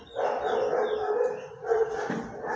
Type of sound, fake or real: real